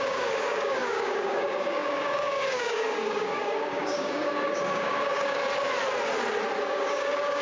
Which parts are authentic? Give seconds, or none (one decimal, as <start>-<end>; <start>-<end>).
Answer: 5.4-6.7